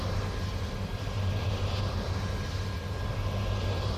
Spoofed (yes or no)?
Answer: no